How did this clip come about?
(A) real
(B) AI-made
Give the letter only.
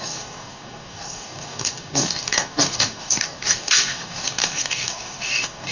B